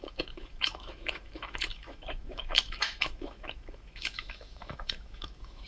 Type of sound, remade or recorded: remade